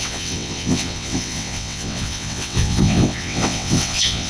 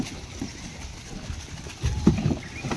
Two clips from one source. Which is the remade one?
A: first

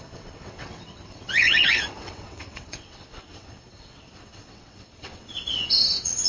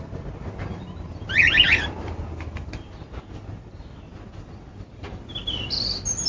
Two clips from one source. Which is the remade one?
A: first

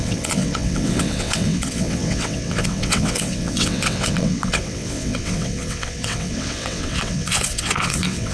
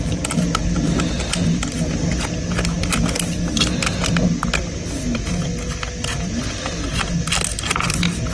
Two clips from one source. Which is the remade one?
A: first